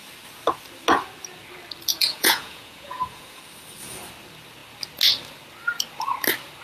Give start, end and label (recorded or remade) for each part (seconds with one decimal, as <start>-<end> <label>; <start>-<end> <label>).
0.0-1.9 recorded; 1.9-3.4 remade; 3.4-6.6 recorded